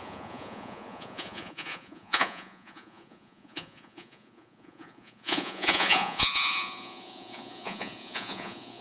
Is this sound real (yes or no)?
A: no